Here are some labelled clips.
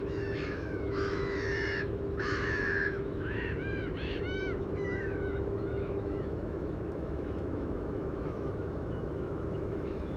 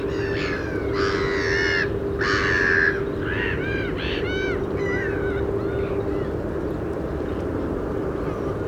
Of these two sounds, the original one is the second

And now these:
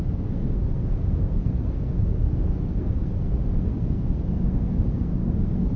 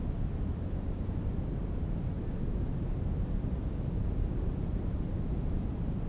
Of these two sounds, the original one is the second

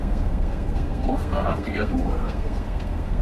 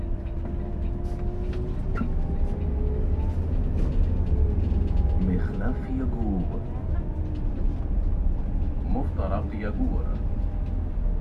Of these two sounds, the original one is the second